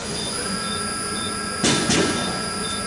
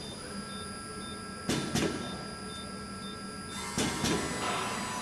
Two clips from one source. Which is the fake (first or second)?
first